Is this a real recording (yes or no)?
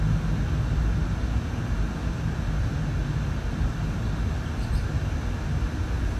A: yes